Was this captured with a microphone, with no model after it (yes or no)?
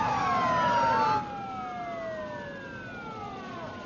yes